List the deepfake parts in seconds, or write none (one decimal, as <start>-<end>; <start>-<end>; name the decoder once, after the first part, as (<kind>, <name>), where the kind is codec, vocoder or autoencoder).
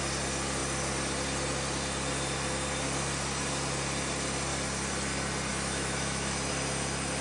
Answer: 5.5-6.5 (autoencoder, DAC-VAE)